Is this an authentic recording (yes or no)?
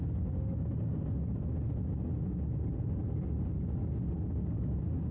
yes